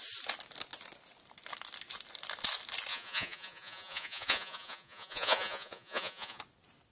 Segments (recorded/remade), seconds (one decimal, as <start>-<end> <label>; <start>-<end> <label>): 0.0-2.9 recorded; 2.9-6.4 remade; 6.4-6.9 recorded